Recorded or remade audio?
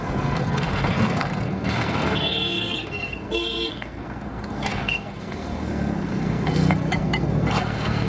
remade